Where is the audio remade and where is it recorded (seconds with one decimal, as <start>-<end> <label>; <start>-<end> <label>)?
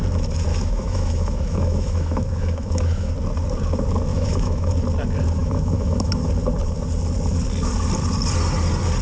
0.0-0.5 recorded; 0.5-3.1 remade; 3.1-4.1 recorded; 4.1-4.7 remade; 4.7-5.4 recorded; 5.4-6.3 remade; 6.3-9.0 recorded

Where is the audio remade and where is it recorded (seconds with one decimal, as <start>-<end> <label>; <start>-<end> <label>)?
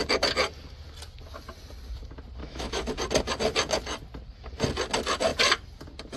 0.0-2.4 recorded; 2.4-2.9 remade; 2.9-6.2 recorded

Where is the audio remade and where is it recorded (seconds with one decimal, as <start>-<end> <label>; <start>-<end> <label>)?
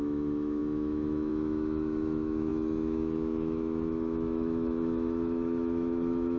0.0-6.4 remade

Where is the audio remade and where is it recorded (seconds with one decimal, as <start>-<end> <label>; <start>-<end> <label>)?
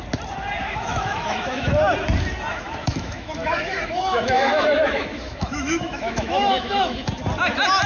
0.0-0.6 recorded; 0.6-1.7 remade; 1.7-2.5 recorded; 2.5-7.1 remade; 7.1-7.9 recorded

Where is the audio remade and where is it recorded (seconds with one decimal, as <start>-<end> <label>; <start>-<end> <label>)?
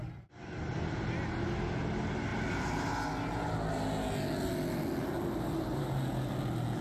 0.0-6.8 recorded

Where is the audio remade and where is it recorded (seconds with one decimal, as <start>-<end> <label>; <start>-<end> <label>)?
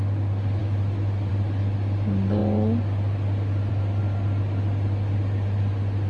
0.0-0.6 recorded; 0.6-1.3 remade; 1.3-6.1 recorded